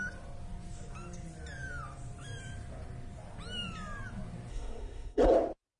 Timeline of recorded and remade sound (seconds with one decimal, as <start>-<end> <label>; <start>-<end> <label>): 0.0-4.5 recorded; 4.5-5.3 remade; 5.3-5.8 recorded